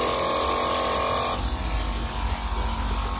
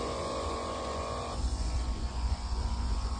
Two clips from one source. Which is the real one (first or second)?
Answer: first